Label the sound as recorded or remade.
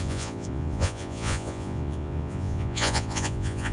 remade